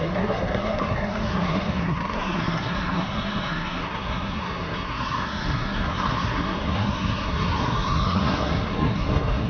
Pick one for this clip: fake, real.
fake